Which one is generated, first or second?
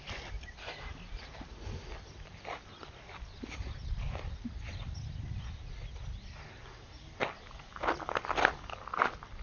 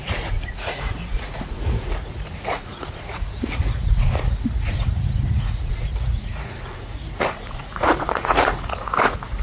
second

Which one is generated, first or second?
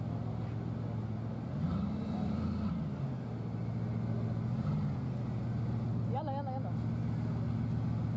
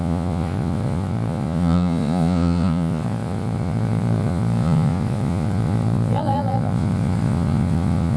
second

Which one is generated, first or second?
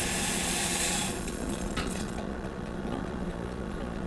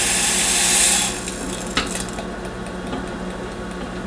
first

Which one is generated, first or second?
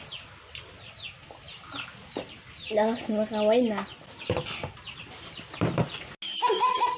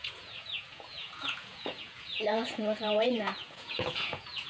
second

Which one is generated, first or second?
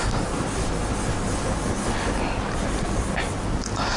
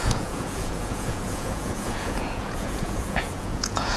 second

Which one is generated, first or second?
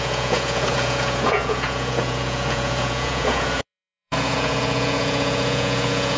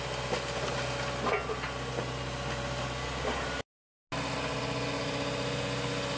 first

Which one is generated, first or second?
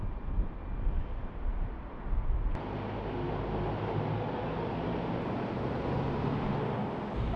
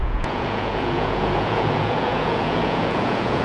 second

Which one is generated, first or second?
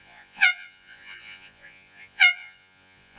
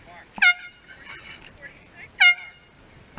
first